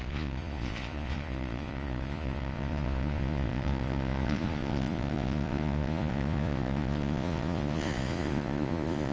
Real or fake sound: fake